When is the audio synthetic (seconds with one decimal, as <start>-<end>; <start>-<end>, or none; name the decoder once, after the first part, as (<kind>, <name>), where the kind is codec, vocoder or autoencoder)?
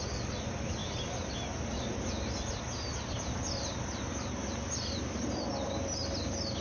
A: 4.4-5.5 (vocoder, BigVGAN v2)